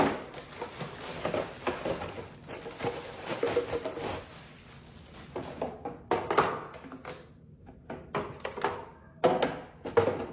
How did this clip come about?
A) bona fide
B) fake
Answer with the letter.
A